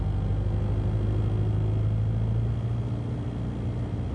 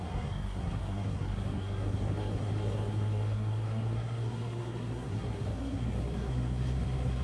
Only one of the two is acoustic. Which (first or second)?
first